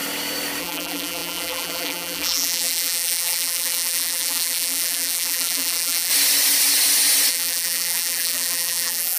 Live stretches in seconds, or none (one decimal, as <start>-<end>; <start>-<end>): 0.0-0.6; 6.1-7.3